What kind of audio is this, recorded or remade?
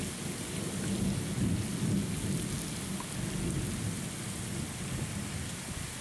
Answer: recorded